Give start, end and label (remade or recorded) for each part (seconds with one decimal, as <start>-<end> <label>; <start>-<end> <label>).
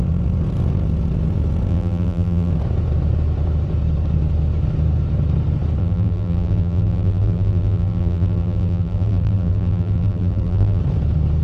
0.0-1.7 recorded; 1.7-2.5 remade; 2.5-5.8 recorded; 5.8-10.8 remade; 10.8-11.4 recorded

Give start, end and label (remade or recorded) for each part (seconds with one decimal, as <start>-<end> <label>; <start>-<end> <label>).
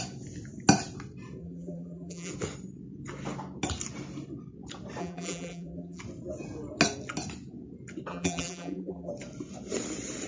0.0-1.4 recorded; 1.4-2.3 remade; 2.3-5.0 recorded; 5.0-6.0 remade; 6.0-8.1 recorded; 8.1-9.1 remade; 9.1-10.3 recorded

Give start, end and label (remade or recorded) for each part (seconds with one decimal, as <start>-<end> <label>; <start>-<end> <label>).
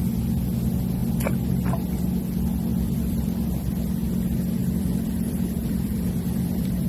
0.0-2.7 recorded; 2.7-4.1 remade; 4.1-4.6 recorded; 4.6-6.9 remade